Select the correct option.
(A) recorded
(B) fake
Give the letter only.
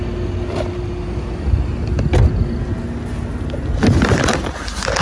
A